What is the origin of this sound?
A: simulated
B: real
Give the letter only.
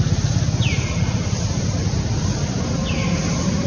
A